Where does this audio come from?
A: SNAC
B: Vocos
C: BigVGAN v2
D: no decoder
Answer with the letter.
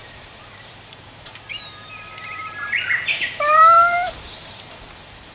C